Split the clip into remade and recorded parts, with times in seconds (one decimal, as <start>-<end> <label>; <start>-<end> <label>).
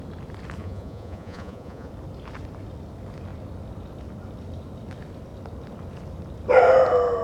0.0-0.6 recorded; 0.6-1.9 remade; 1.9-7.2 recorded